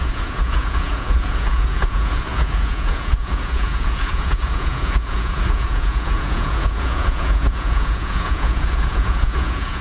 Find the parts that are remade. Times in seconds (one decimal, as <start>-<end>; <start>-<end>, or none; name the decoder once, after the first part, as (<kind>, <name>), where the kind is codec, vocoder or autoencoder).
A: 0.0-9.8 (vocoder, Vocos)